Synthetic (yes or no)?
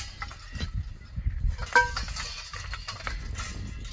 no